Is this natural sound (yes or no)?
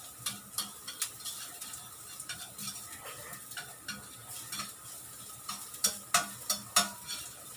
yes